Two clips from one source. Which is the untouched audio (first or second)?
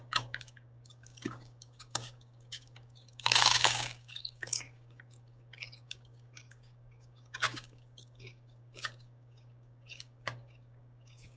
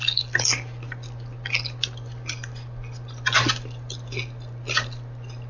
second